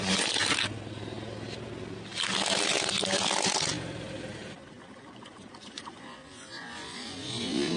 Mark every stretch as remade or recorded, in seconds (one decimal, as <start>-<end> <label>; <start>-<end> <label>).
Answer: 0.0-0.4 remade; 0.4-5.1 recorded; 5.1-7.8 remade